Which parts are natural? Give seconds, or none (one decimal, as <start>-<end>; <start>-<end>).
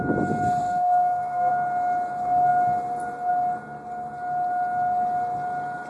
0.0-0.6; 1.5-5.9